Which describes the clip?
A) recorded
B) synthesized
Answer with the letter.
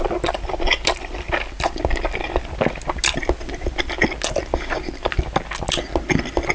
A